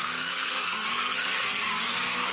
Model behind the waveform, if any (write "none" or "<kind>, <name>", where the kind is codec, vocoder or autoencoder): codec, SNAC